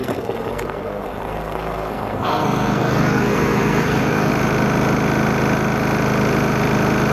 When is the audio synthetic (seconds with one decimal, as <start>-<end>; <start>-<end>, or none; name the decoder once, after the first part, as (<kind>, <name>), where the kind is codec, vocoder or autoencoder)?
0.0-4.3 (codec, SNAC)